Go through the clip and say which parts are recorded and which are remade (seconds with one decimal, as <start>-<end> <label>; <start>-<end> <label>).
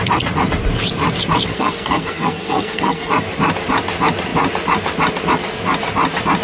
0.0-1.5 recorded; 1.5-3.1 remade; 3.1-6.4 recorded